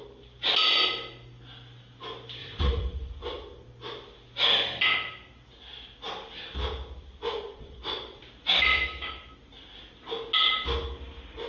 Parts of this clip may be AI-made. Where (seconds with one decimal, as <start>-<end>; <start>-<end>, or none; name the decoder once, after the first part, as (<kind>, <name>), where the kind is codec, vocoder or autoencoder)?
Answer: 2.4-3.1 (vocoder, WaveNeXt); 7.5-8.2

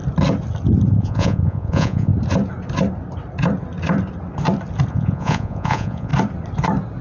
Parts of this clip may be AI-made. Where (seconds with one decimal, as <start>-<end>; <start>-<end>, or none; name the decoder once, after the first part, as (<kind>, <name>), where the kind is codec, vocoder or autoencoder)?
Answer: 0.9-2.1 (vocoder, Vocos); 4.9-6.1

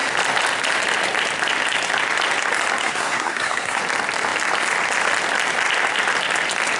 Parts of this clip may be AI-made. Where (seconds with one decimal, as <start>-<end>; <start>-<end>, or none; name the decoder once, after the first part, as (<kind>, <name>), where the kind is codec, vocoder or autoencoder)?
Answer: 2.8-3.8 (codec, SNAC)

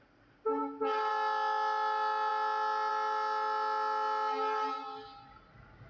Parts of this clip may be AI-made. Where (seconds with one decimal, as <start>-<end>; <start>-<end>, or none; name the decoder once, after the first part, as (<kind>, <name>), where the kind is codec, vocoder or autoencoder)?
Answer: none

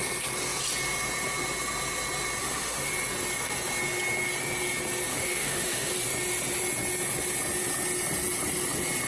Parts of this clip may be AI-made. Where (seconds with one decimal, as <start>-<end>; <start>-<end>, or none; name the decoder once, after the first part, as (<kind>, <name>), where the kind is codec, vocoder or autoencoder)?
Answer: 2.4-2.9 (autoencoder, DAC-VAE); 5.1-5.9

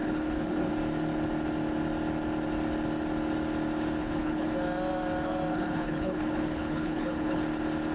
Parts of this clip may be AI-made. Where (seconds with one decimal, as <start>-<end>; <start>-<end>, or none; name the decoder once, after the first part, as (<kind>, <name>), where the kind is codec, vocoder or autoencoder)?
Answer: 0.0-0.7 (codec, HILCodec); 4.0-4.5; 5.5-7.4

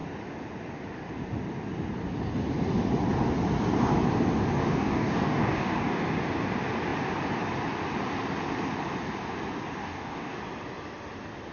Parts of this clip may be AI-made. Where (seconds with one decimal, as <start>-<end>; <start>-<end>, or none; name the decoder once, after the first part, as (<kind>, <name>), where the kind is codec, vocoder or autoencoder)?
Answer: 4.6-6.0 (codec, DAC); 9.8-10.4

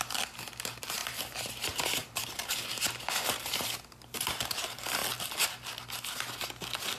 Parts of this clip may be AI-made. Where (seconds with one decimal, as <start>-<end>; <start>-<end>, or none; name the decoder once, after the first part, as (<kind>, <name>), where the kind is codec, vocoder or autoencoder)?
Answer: 0.0-5.0 (vocoder, BigVGAN v2)